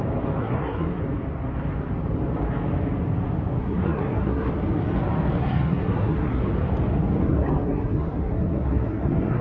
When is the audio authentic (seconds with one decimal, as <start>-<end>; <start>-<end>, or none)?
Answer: 0.0-0.4; 1.0-3.6; 4.5-5.4; 6.4-7.2